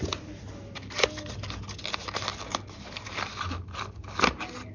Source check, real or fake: real